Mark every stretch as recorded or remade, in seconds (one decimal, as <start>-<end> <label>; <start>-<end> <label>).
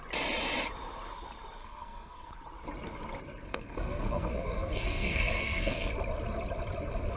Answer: 0.0-1.6 recorded; 1.6-2.3 remade; 2.3-3.4 recorded; 3.4-5.9 remade; 5.9-7.2 recorded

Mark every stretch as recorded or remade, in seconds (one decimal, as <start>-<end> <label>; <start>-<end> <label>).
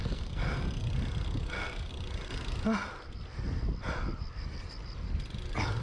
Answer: 0.0-0.8 remade; 0.8-1.4 recorded; 1.4-1.9 remade; 1.9-5.8 recorded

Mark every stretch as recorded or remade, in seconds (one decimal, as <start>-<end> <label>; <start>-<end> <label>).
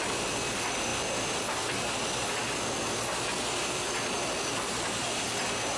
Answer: 0.0-5.8 recorded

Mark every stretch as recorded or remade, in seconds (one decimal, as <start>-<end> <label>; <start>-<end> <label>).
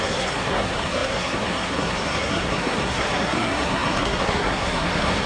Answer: 0.0-5.3 remade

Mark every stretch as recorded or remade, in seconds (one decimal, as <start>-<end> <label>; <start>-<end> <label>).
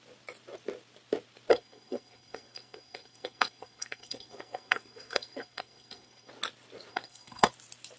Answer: 0.0-1.5 recorded; 1.5-6.3 remade; 6.3-6.9 recorded; 6.9-7.5 remade; 7.5-8.0 recorded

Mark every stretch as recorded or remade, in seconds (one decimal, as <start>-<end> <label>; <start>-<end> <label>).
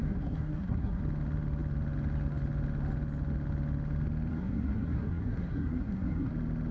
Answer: 0.0-1.0 remade; 1.0-4.3 recorded; 4.3-6.3 remade; 6.3-6.7 recorded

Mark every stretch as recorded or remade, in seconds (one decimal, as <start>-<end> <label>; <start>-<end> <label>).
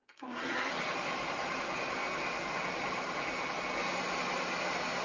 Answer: 0.0-0.7 remade; 0.7-5.0 recorded